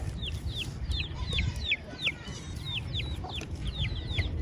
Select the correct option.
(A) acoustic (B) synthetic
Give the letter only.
B